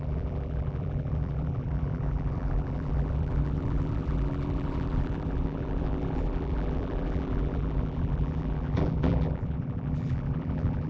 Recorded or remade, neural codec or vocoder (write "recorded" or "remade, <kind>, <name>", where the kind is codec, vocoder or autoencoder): remade, vocoder, BigVGAN v2